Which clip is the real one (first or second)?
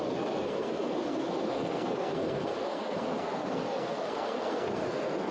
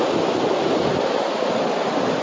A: second